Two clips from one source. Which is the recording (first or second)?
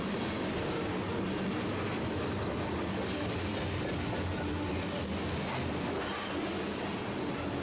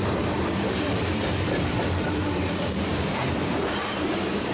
first